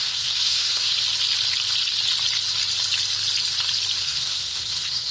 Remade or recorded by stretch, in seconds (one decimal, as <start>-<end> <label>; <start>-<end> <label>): 0.0-0.9 remade; 0.9-4.0 recorded; 4.0-5.1 remade